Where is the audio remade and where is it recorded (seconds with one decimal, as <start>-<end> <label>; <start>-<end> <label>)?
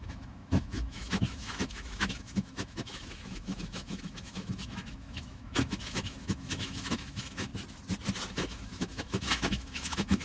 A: 0.0-7.5 remade; 7.5-8.3 recorded; 8.3-10.2 remade